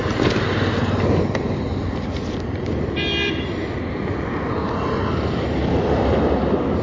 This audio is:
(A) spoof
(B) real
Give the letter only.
B